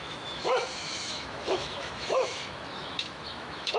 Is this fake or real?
fake